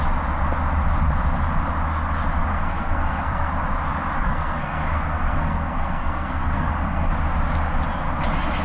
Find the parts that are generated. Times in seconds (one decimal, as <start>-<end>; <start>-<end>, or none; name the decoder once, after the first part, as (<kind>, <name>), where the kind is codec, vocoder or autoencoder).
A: 2.5-3.5 (codec, SNAC); 4.2-7.1